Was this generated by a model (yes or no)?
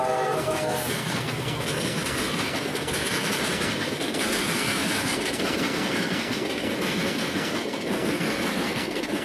yes